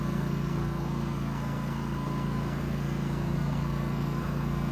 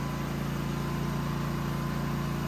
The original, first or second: second